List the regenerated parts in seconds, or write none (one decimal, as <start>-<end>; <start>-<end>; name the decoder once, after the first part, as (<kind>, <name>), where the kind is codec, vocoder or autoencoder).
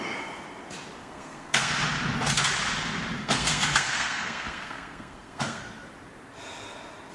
1.0-1.7 (codec, SNAC); 3.2-5.6